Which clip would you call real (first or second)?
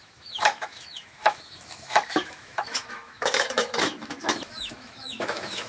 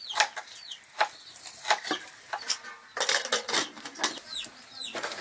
second